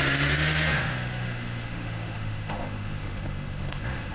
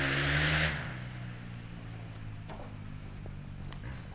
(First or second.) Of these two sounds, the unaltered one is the second